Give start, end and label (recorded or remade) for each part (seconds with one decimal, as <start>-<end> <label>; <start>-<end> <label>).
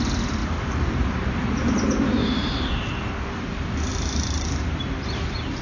0.0-0.4 recorded; 0.4-1.1 remade; 1.1-1.6 recorded; 1.6-2.8 remade; 2.8-3.9 recorded; 3.9-5.6 remade